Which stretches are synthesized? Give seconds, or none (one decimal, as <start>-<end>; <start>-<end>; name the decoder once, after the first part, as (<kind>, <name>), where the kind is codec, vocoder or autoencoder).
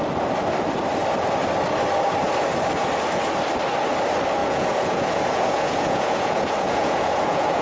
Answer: 4.4-7.6 (vocoder, Vocos)